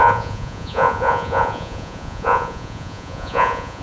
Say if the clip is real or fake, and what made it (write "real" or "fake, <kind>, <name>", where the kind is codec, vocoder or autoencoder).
fake, vocoder, Vocos